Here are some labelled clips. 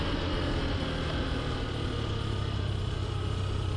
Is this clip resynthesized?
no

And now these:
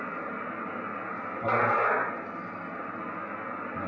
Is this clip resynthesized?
no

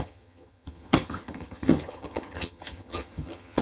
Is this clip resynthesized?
yes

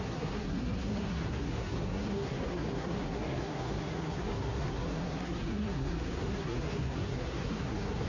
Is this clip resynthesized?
yes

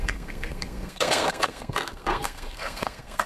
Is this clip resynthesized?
yes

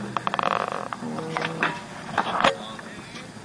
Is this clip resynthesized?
no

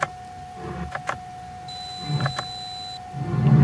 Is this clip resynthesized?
no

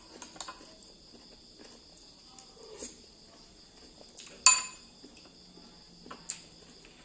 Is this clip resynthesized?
no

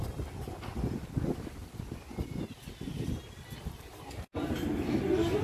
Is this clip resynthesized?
no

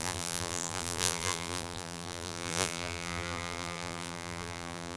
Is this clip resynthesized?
yes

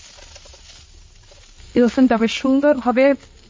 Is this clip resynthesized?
no